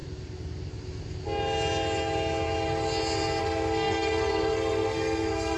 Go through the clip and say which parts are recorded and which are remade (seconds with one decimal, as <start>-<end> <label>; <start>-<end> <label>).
0.0-3.4 recorded; 3.4-5.6 remade